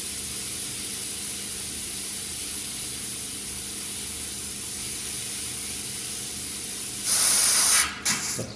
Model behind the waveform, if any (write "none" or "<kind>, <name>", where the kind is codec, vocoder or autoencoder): vocoder, BigVGAN v2